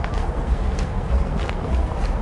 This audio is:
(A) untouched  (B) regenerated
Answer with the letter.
B